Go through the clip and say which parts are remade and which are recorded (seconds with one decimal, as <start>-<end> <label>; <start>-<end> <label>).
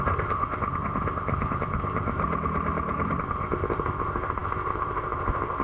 0.0-2.2 remade; 2.2-3.2 recorded; 3.2-5.6 remade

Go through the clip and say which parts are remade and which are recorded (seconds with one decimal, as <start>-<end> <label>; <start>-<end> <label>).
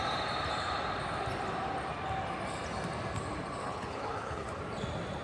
0.0-3.6 recorded; 3.6-4.6 remade; 4.6-5.2 recorded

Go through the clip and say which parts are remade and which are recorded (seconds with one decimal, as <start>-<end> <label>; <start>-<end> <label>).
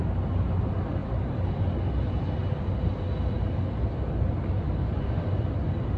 0.0-6.0 recorded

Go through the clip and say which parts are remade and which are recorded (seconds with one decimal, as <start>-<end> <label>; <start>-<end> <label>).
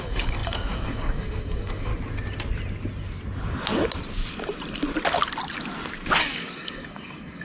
0.0-1.9 remade; 1.9-6.2 recorded; 6.2-7.4 remade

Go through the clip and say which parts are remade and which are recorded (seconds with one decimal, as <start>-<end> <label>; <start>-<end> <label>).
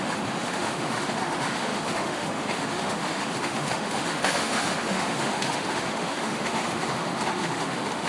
0.0-8.1 remade